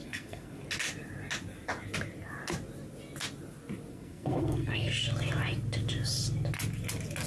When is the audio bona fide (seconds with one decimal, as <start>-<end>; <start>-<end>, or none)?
0.6-3.9; 4.9-7.3